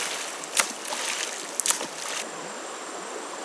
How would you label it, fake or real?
real